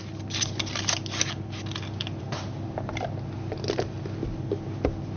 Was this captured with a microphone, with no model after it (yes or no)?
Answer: yes